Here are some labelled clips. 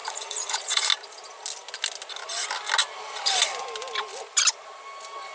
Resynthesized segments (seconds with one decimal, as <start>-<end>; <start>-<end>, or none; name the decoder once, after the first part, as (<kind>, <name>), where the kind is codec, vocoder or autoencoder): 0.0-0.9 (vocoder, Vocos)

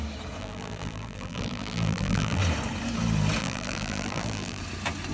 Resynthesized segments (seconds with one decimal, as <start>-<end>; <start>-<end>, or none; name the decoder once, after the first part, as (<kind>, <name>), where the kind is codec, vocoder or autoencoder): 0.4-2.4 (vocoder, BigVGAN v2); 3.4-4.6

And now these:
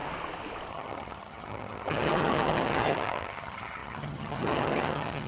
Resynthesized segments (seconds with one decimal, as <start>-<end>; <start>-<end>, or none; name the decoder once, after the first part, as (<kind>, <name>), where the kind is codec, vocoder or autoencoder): 0.7-5.3 (vocoder, HiFi-GAN)

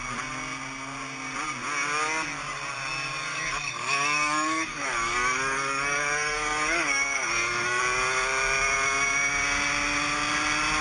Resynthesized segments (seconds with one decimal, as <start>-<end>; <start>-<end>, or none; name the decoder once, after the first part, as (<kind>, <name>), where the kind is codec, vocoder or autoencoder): 3.3-7.8 (codec, DAC)